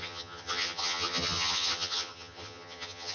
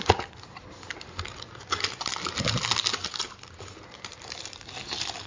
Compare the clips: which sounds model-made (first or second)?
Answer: first